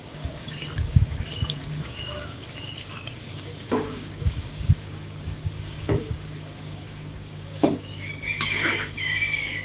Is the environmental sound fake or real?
fake